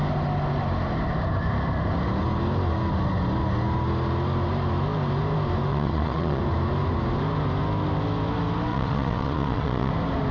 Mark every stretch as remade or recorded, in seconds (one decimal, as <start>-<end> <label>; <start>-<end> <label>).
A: 0.0-5.7 recorded; 5.7-6.4 remade; 6.4-8.7 recorded; 8.7-9.9 remade; 9.9-10.3 recorded